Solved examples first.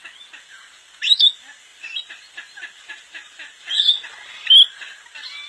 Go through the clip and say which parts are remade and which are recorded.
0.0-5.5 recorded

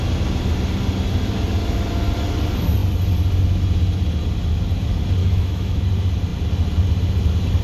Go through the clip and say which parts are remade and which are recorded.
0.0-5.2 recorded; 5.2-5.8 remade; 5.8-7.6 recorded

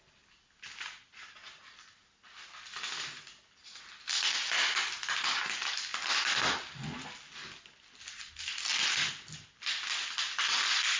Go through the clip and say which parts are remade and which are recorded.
0.0-11.0 recorded